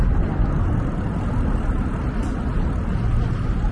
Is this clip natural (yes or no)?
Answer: no